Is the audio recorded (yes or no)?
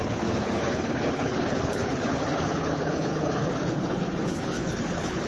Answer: no